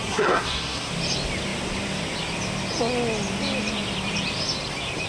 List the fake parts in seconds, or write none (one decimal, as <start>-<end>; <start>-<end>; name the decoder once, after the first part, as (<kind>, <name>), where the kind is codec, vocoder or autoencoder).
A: 0.0-0.9 (codec, SNAC)